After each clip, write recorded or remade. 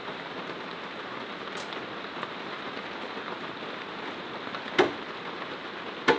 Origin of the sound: recorded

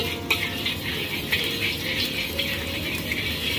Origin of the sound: recorded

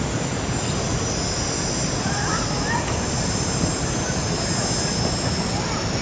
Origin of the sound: recorded